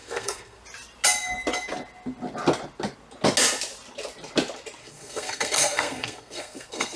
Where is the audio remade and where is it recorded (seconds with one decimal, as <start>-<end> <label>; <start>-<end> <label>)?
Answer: 0.0-0.6 remade; 0.6-4.8 recorded; 4.8-7.0 remade